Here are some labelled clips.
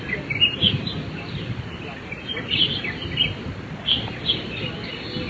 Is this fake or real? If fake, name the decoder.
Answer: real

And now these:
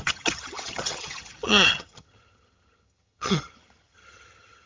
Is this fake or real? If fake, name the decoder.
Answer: fake, vocoder, HiFi-GAN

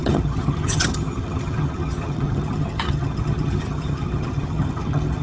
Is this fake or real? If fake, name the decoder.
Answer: fake, vocoder, HiFi-GAN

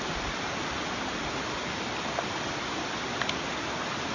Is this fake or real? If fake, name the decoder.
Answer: real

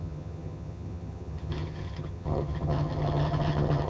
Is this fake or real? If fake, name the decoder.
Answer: fake, vocoder, HiFi-GAN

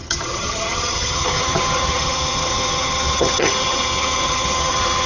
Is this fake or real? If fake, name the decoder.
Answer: fake, vocoder, HiFi-GAN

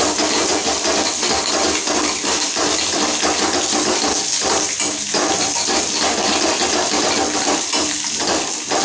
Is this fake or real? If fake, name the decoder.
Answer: real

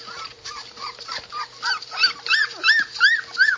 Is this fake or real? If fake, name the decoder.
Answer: real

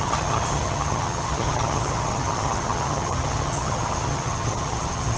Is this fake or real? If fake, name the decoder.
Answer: fake, vocoder, HiFi-GAN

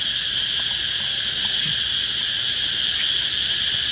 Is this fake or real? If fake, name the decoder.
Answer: real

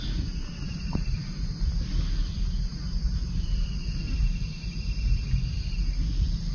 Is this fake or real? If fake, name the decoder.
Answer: real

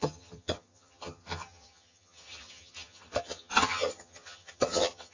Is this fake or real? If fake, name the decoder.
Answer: fake, vocoder, HiFi-GAN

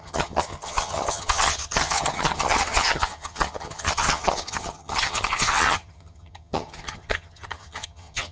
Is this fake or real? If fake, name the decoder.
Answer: fake, vocoder, HiFi-GAN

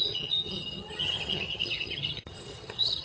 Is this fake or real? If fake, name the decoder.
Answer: fake, vocoder, HiFi-GAN